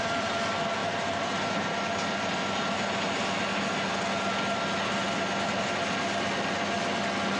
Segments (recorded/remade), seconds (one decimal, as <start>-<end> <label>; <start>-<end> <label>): 0.0-0.8 recorded; 0.8-1.7 remade; 1.7-7.4 recorded